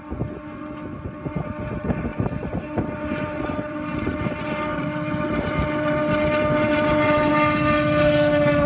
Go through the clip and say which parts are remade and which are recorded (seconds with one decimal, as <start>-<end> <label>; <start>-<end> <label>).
0.0-2.1 recorded; 2.1-7.3 remade; 7.3-8.7 recorded